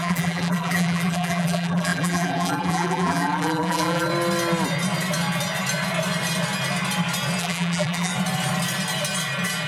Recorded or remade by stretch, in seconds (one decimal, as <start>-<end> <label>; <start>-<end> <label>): 0.0-4.1 remade; 4.1-7.4 recorded; 7.4-8.1 remade; 8.1-9.7 recorded